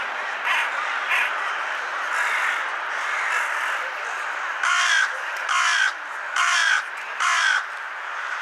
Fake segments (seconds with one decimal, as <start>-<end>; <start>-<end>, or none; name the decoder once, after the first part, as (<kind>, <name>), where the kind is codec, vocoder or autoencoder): 0.0-8.4 (vocoder, BigVGAN v2)

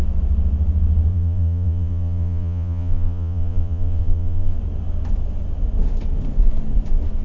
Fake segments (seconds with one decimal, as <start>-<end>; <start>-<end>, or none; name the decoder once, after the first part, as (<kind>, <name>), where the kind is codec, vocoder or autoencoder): 1.1-4.6 (vocoder, Vocos)